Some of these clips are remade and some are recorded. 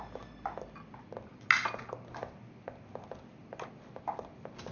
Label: recorded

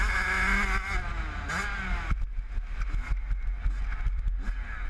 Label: recorded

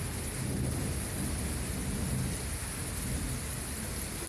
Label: recorded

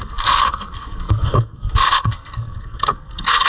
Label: remade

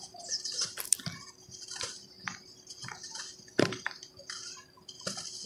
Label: recorded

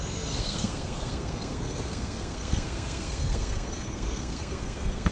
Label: remade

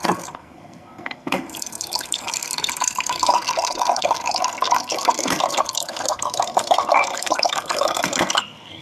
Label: remade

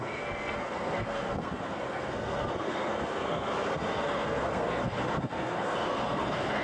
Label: remade